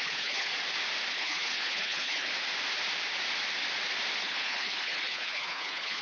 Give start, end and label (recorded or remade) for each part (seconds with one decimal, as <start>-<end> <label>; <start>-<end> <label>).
0.0-0.5 remade; 0.5-1.1 recorded; 1.1-2.3 remade; 2.3-4.2 recorded; 4.2-6.0 remade